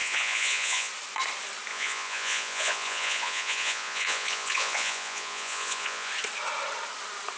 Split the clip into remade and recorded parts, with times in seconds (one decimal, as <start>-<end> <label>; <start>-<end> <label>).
0.0-0.9 remade; 0.9-1.7 recorded; 1.7-6.1 remade; 6.1-7.4 recorded